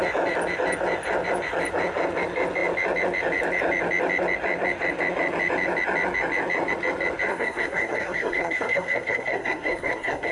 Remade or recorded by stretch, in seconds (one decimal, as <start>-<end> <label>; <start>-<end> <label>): 0.0-7.3 recorded; 7.3-10.3 remade